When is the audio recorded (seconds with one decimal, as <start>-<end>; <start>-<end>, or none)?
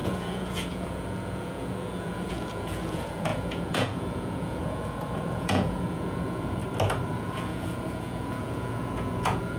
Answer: 6.6-7.1